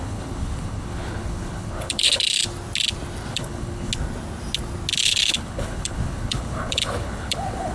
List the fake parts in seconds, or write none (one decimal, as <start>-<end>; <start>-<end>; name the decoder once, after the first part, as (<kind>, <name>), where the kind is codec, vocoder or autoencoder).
0.0-2.5 (codec, HILCodec); 3.3-3.9; 5.0-7.7